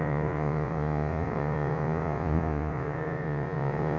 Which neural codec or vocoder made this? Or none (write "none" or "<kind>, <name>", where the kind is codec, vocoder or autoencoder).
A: vocoder, Vocos